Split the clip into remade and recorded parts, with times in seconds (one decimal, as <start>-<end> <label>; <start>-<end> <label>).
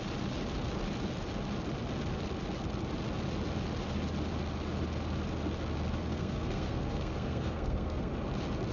0.0-6.0 recorded; 6.0-8.1 remade; 8.1-8.7 recorded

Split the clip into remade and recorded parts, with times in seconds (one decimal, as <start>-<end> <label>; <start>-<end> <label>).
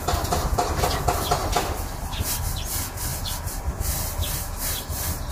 0.0-5.3 recorded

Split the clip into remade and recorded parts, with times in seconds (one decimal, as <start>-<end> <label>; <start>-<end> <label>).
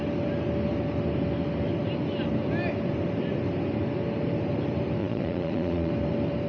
0.0-5.0 recorded; 5.0-5.9 remade; 5.9-6.5 recorded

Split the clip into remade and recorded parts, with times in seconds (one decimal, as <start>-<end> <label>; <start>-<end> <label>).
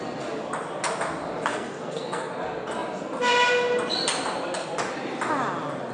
0.0-1.5 recorded; 1.5-2.3 remade; 2.3-5.9 recorded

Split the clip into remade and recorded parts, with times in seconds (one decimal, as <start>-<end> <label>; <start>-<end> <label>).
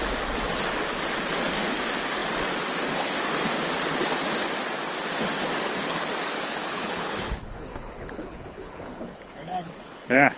0.0-6.6 recorded; 6.6-10.4 remade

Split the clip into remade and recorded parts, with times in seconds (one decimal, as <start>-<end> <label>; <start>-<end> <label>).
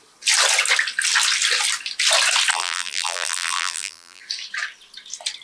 0.0-2.5 recorded; 2.5-4.2 remade; 4.2-5.4 recorded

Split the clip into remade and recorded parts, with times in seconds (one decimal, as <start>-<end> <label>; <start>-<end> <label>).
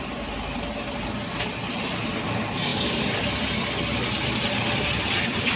0.0-5.6 recorded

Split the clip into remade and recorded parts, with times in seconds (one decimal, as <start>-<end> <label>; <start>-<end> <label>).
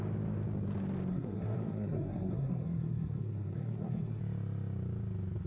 0.0-1.1 recorded; 1.1-4.2 remade; 4.2-5.5 recorded